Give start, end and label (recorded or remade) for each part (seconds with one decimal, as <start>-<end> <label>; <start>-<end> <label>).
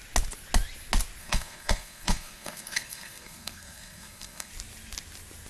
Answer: 0.0-1.2 recorded; 1.2-4.5 remade; 4.5-5.5 recorded